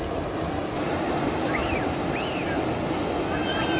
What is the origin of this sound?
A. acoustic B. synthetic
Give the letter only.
A